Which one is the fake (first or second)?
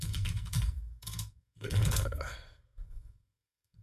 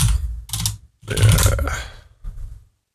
first